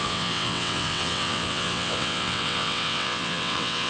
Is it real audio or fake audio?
fake